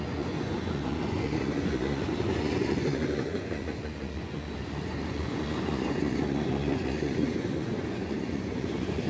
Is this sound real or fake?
fake